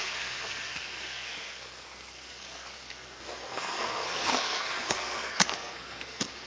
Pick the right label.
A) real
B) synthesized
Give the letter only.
B